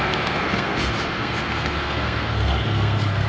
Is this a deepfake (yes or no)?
yes